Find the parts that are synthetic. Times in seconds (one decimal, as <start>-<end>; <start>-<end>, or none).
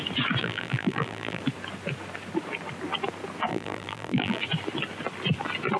0.4-1.4; 3.5-4.4